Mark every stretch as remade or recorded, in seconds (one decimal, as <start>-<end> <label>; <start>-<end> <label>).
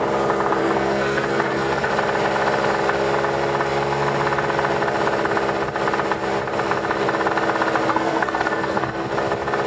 0.0-0.6 recorded; 0.6-1.9 remade; 1.9-7.9 recorded; 7.9-9.1 remade; 9.1-9.7 recorded